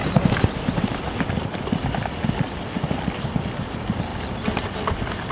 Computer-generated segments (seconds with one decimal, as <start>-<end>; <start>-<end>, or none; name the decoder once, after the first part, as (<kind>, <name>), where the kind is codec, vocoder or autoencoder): 0.0-3.2 (vocoder, BigVGAN v2)